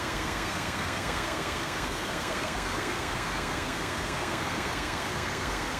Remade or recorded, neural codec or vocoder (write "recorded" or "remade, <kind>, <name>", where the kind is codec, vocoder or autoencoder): remade, codec, SNAC